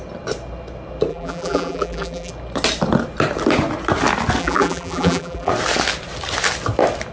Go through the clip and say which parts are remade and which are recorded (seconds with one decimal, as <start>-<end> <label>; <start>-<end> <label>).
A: 0.0-1.1 recorded; 1.1-2.3 remade; 2.3-4.4 recorded; 4.4-5.5 remade; 5.5-7.1 recorded